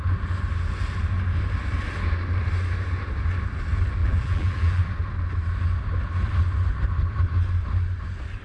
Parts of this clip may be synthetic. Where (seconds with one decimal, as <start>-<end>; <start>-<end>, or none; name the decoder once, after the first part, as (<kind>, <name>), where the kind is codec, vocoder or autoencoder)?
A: 4.0-4.8 (vocoder, BigVGAN v2)